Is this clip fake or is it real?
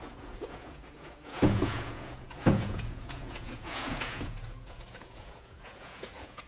fake